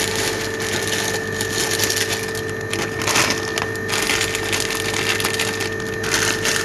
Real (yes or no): yes